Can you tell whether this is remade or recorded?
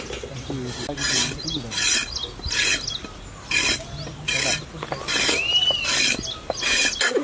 recorded